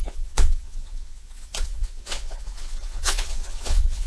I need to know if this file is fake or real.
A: fake